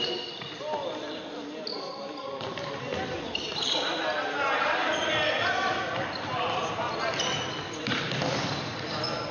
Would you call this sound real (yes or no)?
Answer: yes